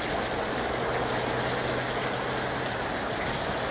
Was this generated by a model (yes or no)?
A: no